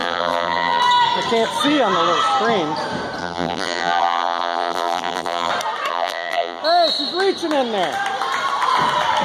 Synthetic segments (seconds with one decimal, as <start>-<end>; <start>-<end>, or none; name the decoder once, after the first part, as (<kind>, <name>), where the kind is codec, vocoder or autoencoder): 0.0-0.8 (vocoder, BigVGAN v2); 3.2-5.5; 5.9-6.6